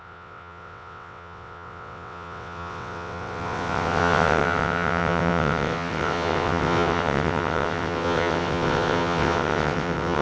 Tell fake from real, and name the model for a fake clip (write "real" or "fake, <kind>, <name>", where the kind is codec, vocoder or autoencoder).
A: fake, vocoder, WaveNeXt